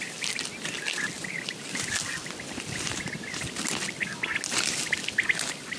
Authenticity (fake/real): real